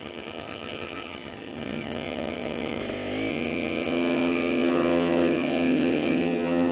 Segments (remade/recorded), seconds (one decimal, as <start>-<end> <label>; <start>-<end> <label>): 0.0-2.8 remade; 2.8-3.3 recorded; 3.3-6.7 remade